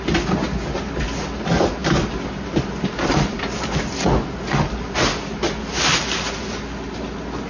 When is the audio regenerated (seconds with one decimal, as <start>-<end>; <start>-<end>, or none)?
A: none